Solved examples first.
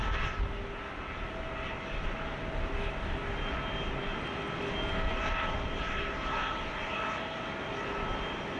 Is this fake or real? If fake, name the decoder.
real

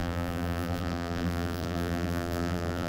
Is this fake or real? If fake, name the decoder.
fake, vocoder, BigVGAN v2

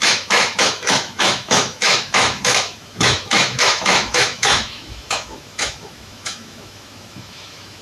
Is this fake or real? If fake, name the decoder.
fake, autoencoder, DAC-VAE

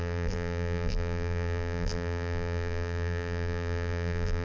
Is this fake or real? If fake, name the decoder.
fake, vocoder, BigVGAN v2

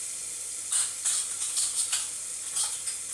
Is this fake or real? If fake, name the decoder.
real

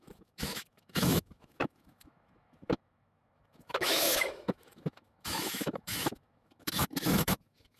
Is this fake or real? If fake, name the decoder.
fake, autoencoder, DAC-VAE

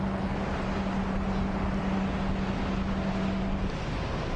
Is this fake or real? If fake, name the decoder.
real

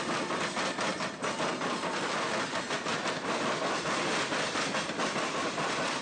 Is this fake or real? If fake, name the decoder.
real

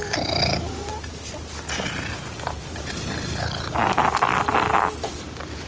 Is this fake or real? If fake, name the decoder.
real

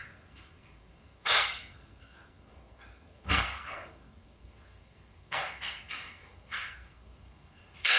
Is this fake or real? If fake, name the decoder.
fake, codec, SNAC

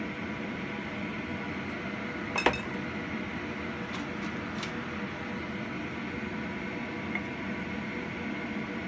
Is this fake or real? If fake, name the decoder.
real